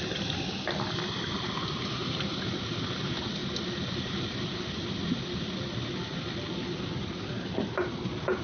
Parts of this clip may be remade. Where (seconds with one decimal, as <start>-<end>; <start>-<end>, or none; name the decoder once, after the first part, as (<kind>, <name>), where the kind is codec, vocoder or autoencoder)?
none